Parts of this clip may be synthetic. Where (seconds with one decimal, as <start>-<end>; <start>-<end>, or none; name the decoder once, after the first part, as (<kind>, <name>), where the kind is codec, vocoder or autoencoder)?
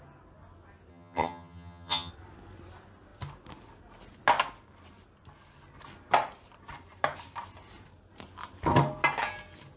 0.9-2.1 (vocoder, HiFi-GAN)